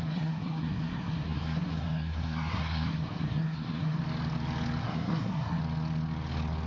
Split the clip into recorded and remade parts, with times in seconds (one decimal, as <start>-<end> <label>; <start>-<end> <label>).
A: 0.0-4.0 remade; 4.0-4.8 recorded; 4.8-5.6 remade; 5.6-6.7 recorded